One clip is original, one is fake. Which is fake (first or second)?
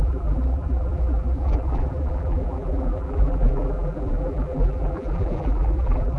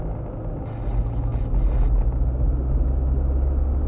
first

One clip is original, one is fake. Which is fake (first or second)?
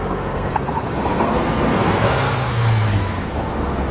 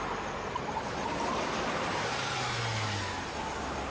first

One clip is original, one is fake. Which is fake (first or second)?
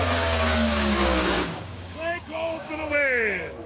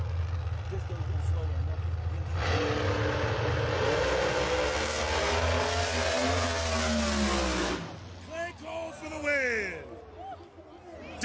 first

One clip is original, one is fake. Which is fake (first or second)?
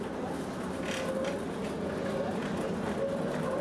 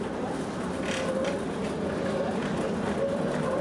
second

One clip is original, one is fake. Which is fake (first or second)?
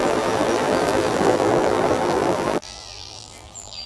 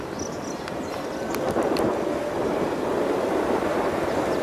first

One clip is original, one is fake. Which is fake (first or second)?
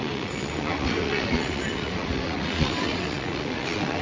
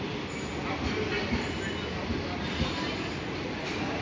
first